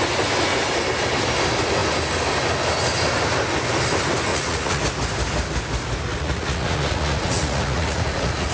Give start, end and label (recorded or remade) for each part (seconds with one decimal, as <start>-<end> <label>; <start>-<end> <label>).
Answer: 0.0-4.3 recorded; 4.3-4.8 remade; 4.8-6.1 recorded; 6.1-8.5 remade